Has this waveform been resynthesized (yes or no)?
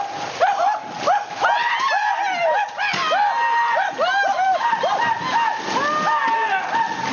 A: no